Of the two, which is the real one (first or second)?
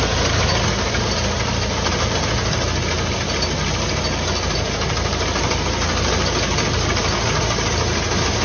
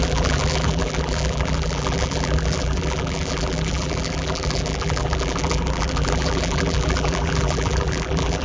first